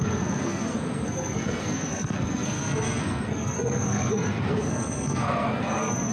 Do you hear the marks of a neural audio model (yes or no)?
yes